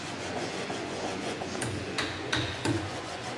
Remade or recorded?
remade